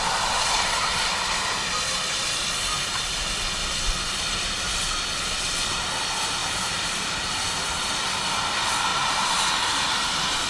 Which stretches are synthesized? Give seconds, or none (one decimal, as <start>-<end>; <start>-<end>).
6.4-7.5; 8.9-9.5